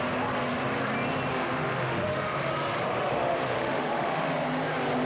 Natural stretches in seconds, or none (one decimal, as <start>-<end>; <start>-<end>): 0.0-1.3; 2.5-2.9; 4.3-5.0